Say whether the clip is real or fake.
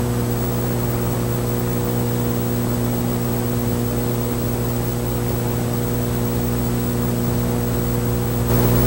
real